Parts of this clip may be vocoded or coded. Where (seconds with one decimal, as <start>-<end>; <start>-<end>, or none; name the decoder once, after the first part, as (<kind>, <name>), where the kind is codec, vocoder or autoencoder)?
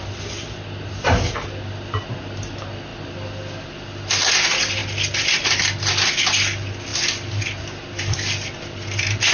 none